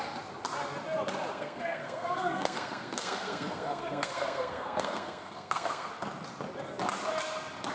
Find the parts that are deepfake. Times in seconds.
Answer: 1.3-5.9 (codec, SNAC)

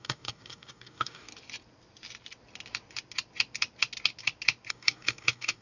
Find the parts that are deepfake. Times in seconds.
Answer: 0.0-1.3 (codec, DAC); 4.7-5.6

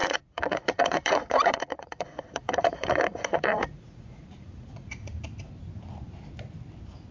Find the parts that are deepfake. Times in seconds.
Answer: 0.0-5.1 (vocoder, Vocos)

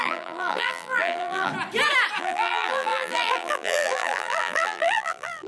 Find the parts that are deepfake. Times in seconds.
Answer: 0.0-1.5 (vocoder, BigVGAN v2); 2.2-5.5

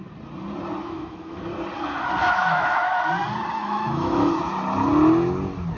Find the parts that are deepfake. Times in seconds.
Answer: 0.8-1.4 (autoencoder, DAC-VAE); 2.2-3.1; 3.6-4.3

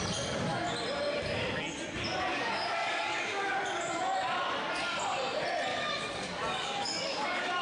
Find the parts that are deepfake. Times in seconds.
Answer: 2.3-3.6 (codec, DAC); 5.7-7.6

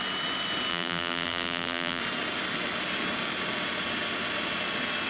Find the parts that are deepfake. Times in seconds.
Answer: 0.7-2.0 (vocoder, BigVGAN v2)